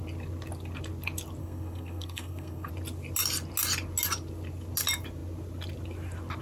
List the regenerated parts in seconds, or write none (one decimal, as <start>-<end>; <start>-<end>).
1.4-2.7